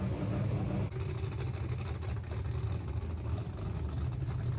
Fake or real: real